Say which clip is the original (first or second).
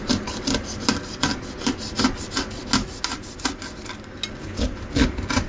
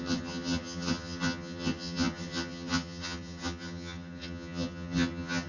first